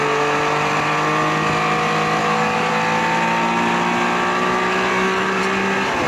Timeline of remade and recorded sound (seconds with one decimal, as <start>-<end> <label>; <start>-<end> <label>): 0.0-2.2 recorded; 2.2-2.7 remade; 2.7-4.9 recorded; 4.9-5.4 remade; 5.4-6.1 recorded